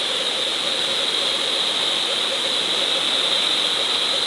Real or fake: real